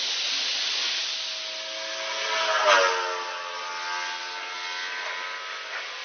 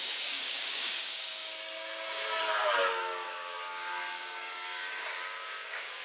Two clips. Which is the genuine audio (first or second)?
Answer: first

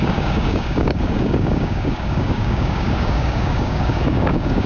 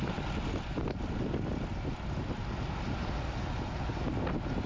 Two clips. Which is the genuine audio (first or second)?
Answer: second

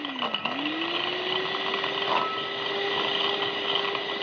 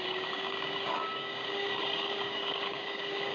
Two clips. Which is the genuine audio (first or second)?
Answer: first